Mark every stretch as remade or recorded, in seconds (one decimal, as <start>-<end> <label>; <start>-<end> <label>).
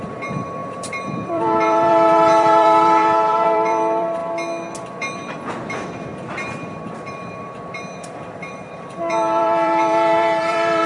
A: 0.0-4.2 remade; 4.2-5.0 recorded; 5.0-10.9 remade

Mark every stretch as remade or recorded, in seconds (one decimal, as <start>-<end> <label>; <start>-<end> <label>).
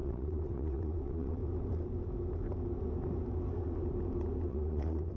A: 0.0-1.4 remade; 1.4-4.5 recorded; 4.5-5.2 remade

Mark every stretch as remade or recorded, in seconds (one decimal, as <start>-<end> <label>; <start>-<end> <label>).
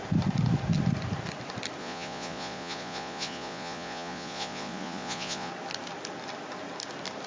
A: 0.0-1.8 recorded; 1.8-5.5 remade; 5.5-7.3 recorded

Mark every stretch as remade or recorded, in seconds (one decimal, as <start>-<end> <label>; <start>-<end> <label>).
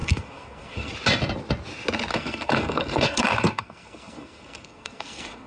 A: 0.0-0.9 remade; 0.9-2.1 recorded; 2.1-5.5 remade